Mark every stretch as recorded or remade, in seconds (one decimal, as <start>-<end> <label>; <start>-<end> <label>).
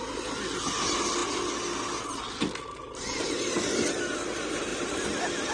0.0-5.5 recorded